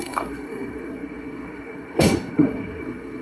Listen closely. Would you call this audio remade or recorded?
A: remade